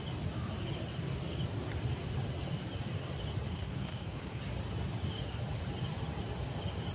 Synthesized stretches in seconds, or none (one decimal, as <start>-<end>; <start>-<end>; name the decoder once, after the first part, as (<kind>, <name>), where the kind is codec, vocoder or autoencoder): 3.5-4.4 (codec, SNAC)